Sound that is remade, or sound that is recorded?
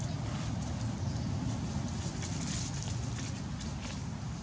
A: recorded